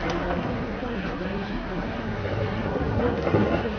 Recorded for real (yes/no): no